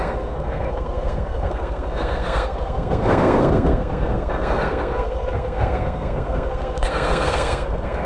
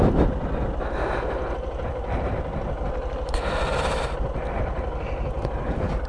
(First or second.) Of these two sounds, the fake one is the first